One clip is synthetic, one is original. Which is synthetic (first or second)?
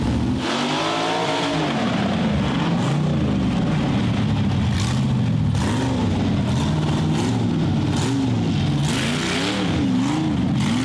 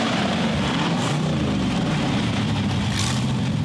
second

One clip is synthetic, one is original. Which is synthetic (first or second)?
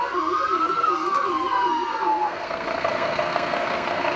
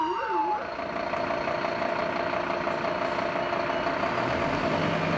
first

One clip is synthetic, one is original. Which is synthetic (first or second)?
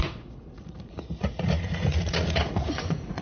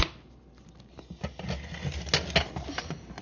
first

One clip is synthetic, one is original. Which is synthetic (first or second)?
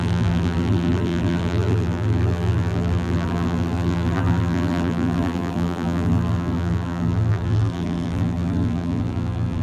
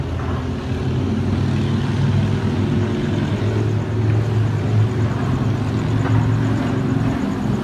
first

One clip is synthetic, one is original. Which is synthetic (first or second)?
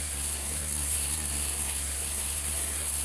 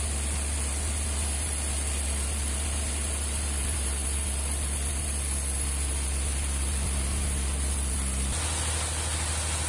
first